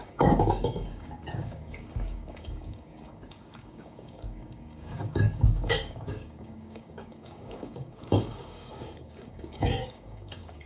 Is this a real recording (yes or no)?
no